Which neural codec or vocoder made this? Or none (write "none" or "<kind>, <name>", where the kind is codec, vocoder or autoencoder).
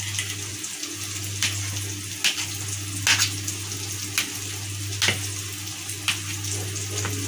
none